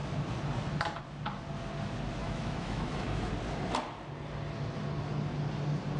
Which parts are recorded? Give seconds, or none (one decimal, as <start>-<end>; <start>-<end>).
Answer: 0.0-2.2; 3.3-6.0